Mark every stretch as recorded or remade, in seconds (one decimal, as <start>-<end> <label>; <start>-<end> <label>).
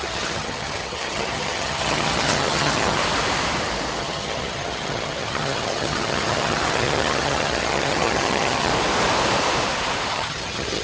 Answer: 0.0-3.0 remade; 3.0-4.0 recorded; 4.0-8.7 remade; 8.7-10.1 recorded; 10.1-10.8 remade